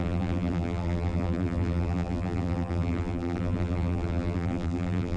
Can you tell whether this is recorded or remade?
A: remade